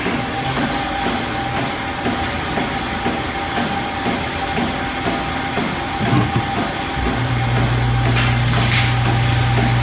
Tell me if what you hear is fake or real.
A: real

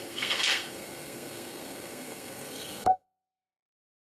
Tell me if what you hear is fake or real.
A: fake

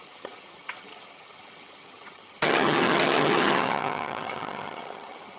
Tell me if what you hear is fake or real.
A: fake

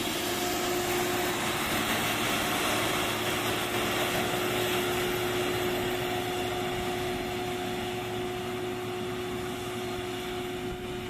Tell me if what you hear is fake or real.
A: real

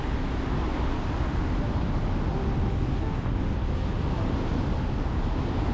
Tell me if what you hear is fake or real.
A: real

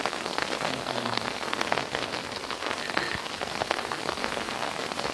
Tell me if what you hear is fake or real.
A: fake